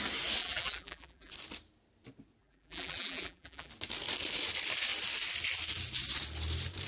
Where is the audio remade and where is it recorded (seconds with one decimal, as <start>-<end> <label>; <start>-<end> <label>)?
0.0-0.4 recorded; 0.4-1.3 remade; 1.3-2.4 recorded; 2.4-3.7 remade; 3.7-6.9 recorded